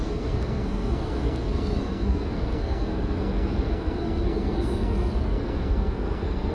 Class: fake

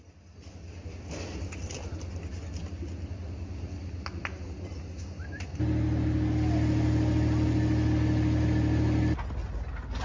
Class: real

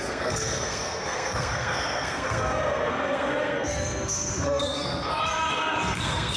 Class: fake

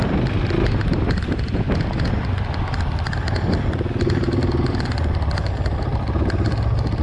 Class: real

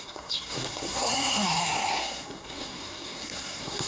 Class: fake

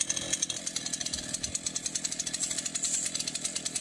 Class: real